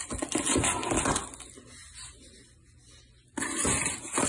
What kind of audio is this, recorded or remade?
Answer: recorded